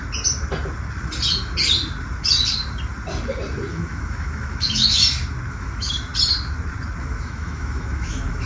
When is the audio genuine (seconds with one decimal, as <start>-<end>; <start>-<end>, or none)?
0.0-3.7; 5.0-5.5; 6.1-7.0

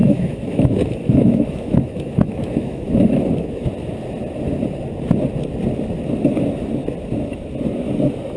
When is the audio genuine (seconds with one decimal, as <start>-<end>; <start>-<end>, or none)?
3.7-8.4

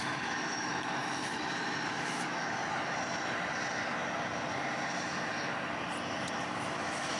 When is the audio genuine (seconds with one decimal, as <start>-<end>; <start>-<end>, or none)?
2.6-6.6

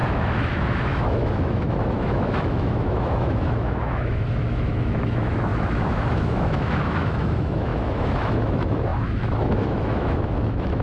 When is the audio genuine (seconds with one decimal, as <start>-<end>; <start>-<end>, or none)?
none

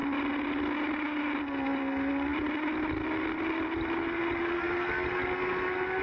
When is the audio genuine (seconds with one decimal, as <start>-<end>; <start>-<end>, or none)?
0.0-6.0

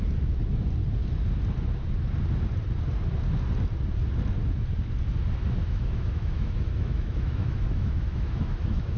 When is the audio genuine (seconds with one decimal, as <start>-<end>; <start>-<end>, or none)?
0.0-5.6